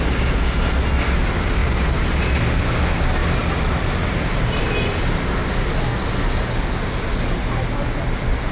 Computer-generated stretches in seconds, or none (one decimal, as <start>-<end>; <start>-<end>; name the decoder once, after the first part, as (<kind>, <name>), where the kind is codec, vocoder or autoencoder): 1.6-2.6 (vocoder, BigVGAN v2); 3.2-4.6

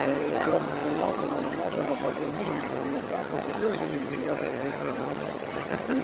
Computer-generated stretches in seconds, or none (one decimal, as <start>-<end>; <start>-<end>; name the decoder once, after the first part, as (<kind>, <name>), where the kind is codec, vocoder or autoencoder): 0.0-6.0 (vocoder, HiFi-GAN)